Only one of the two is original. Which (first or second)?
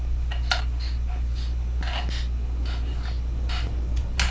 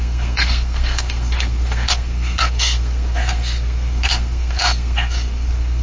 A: first